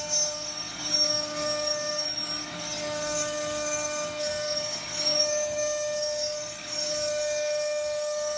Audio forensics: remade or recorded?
remade